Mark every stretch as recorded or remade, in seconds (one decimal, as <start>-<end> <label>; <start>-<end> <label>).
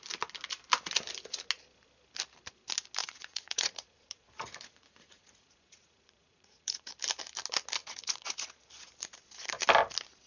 0.0-3.0 recorded; 3.0-6.9 remade; 6.9-7.8 recorded; 7.8-8.7 remade; 8.7-10.3 recorded